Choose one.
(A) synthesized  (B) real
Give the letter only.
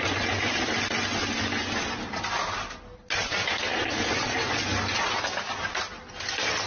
B